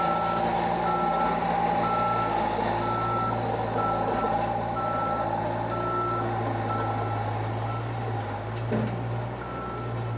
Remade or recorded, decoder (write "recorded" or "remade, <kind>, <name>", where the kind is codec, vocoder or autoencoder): recorded